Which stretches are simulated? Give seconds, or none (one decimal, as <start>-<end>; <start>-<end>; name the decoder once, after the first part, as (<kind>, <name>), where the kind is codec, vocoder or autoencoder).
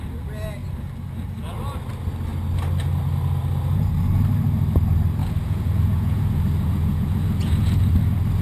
5.2-7.9 (vocoder, Vocos)